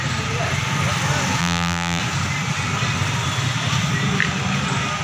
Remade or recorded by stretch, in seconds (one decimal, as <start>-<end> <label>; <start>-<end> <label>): 0.0-1.4 recorded; 1.4-2.0 remade; 2.0-5.0 recorded